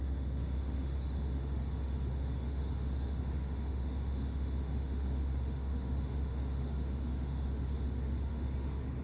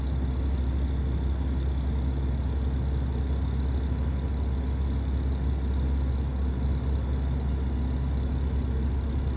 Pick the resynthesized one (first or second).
first